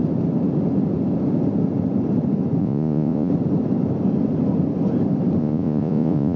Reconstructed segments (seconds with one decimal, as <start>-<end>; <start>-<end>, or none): 2.6-3.3; 5.4-6.4